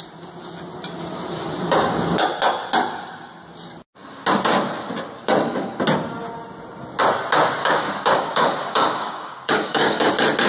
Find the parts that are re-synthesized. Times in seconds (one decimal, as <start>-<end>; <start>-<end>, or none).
7.6-10.1